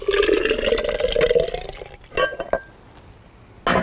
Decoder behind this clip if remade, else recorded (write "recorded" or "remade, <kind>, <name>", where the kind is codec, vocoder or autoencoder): recorded